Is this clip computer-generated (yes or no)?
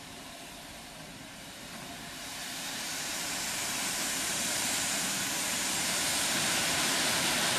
yes